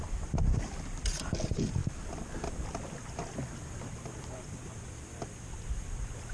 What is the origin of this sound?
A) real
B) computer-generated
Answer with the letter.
A